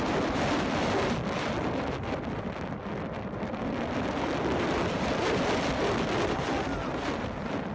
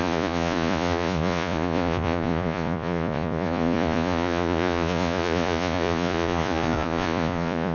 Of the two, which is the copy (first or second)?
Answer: second